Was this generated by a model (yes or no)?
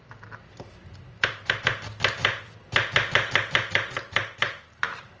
yes